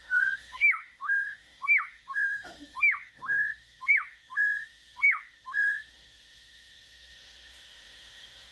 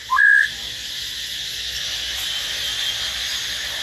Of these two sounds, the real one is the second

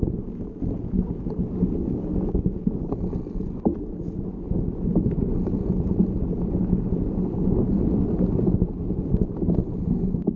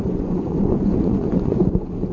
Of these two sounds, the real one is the first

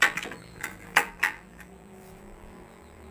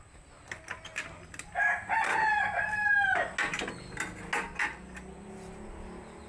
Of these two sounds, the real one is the second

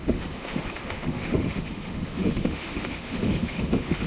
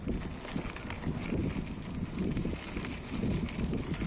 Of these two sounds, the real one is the second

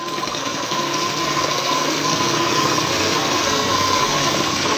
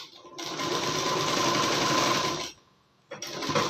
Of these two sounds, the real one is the second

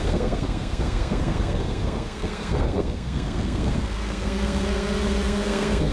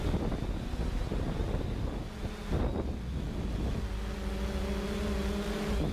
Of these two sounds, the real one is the second